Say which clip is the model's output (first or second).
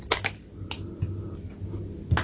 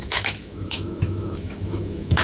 second